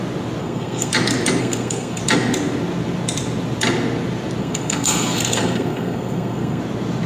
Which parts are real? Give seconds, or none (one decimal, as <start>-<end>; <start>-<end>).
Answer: 0.0-0.4; 0.9-1.4; 2.0-4.4; 6.6-7.1